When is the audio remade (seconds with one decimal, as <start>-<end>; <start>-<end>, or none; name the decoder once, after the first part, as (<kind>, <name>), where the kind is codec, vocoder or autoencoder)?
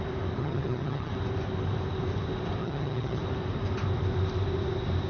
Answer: 0.4-1.1 (vocoder, HiFi-GAN); 2.6-3.2